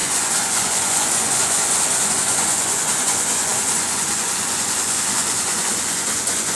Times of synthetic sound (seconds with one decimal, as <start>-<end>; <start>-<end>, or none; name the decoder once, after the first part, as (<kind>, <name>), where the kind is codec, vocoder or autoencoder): 0.0-6.6 (vocoder, Vocos)